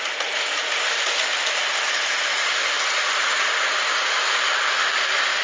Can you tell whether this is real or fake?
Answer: real